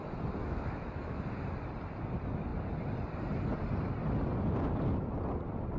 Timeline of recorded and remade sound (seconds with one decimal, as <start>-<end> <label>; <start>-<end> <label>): 0.0-0.4 recorded; 0.4-1.2 remade; 1.2-5.8 recorded